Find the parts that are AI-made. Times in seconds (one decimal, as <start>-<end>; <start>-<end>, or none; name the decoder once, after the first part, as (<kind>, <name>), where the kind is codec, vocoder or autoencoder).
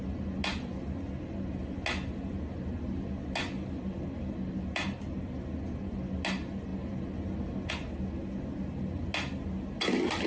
none